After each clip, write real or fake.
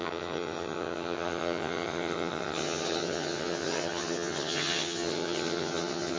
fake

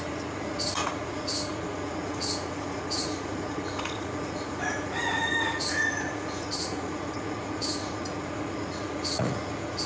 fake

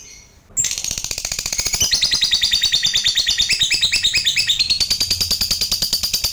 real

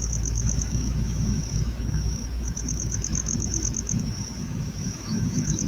fake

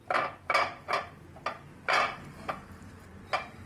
real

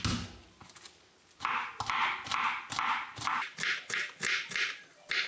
real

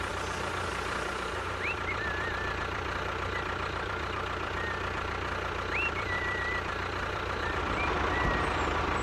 fake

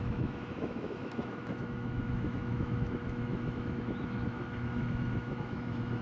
fake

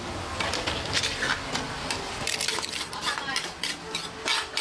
real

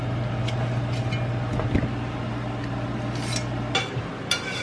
real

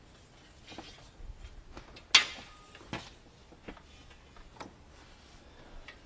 real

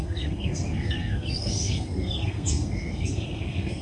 fake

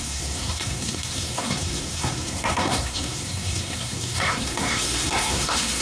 fake